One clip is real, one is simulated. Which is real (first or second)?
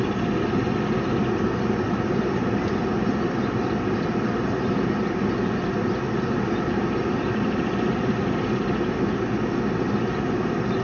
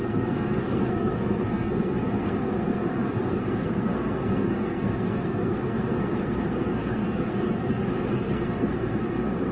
first